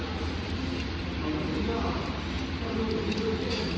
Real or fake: real